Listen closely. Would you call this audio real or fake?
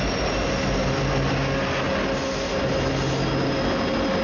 real